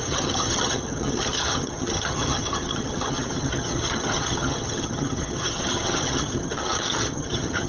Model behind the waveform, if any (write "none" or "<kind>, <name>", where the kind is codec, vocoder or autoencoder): vocoder, HiFi-GAN